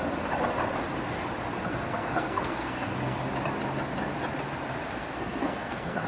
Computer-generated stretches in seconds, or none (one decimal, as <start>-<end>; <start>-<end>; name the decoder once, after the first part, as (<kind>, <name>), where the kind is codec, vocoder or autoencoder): 1.7-3.2 (codec, SNAC); 5.0-6.1